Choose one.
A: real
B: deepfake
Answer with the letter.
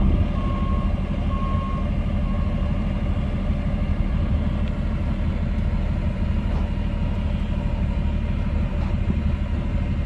A